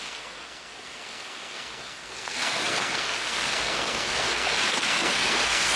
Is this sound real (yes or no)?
no